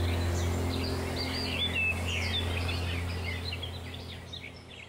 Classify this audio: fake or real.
real